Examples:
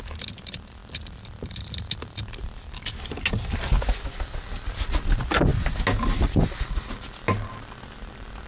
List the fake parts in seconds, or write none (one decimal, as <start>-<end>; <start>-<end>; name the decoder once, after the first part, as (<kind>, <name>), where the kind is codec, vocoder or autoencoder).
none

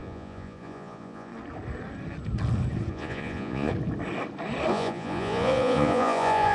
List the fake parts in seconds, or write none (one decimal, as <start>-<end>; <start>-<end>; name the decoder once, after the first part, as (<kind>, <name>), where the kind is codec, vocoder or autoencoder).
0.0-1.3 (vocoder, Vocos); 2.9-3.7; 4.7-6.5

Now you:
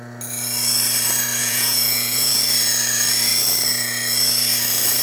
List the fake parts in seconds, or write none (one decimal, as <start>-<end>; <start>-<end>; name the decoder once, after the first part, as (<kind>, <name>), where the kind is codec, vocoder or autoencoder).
1.4-2.4 (vocoder, Vocos)

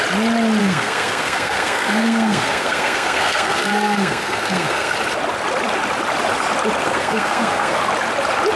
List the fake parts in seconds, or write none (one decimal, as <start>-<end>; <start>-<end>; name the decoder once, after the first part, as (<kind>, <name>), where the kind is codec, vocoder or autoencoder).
0.6-4.9 (codec, SNAC); 6.8-7.8

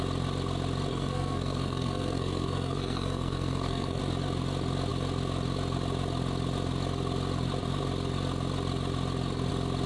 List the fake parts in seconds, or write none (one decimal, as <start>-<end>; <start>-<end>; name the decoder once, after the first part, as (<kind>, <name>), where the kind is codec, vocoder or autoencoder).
0.9-4.0 (codec, SNAC)

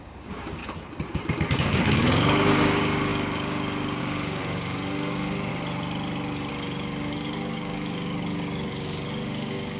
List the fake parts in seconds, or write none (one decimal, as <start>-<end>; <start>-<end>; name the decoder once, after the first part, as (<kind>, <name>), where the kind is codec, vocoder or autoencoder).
0.0-0.6 (codec, DAC); 1.1-5.5; 6.5-9.8